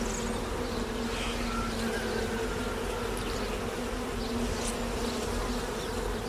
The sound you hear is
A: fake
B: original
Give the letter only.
B